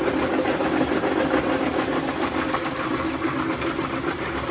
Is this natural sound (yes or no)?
yes